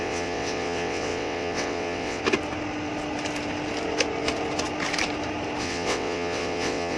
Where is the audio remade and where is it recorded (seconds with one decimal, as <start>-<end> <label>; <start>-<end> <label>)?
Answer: 0.0-2.2 remade; 2.2-5.6 recorded; 5.6-7.0 remade